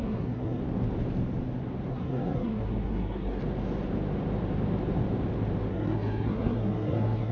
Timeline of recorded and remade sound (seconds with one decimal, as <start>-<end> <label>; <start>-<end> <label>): 0.0-0.6 remade; 0.6-1.9 recorded; 1.9-3.4 remade; 3.4-5.7 recorded; 5.7-7.3 remade